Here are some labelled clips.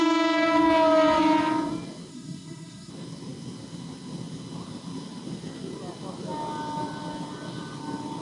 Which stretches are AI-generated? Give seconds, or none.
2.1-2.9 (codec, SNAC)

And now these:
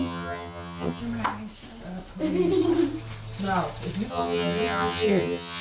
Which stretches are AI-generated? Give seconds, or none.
0.0-1.0 (vocoder, HiFi-GAN); 4.1-5.6

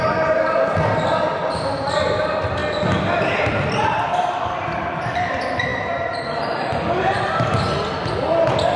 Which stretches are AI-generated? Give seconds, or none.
0.0-2.6 (vocoder, BigVGAN v2); 3.6-8.8

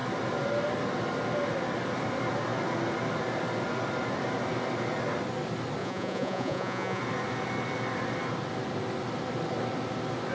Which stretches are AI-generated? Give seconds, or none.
5.8-7.0 (vocoder, Vocos)

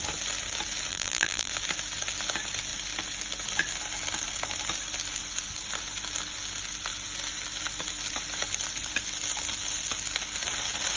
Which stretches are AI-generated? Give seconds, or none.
0.9-1.5 (vocoder, BigVGAN v2)